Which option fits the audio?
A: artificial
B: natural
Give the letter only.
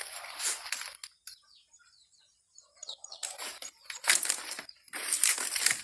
B